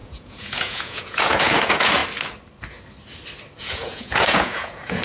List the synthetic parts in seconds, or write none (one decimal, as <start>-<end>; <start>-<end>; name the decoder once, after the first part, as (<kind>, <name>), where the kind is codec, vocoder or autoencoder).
0.0-2.0 (vocoder, Vocos); 3.6-5.0